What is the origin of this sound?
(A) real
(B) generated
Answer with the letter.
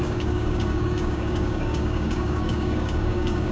B